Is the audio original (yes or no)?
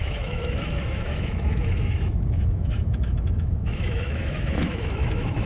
no